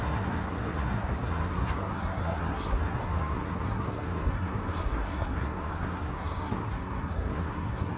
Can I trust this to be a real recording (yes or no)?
no